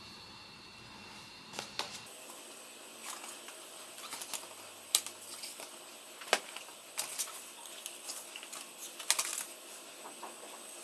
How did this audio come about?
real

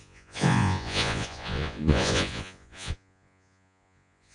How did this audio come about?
fake